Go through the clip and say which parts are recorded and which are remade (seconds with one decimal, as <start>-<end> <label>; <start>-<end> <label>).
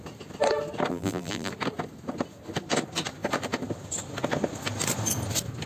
0.0-0.9 recorded; 0.9-1.5 remade; 1.5-5.7 recorded